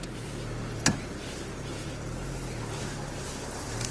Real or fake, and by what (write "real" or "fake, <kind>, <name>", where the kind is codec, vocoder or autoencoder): real